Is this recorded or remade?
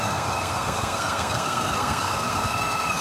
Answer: remade